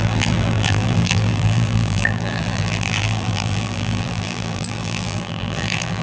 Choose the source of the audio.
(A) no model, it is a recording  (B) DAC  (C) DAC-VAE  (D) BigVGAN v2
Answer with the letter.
D